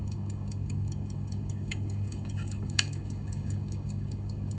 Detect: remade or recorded remade